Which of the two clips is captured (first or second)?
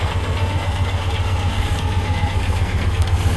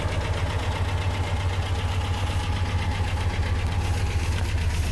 second